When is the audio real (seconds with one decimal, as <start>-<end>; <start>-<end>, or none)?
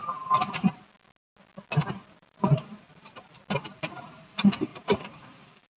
0.0-1.8; 3.3-4.7